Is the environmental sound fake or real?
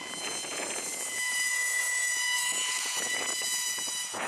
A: fake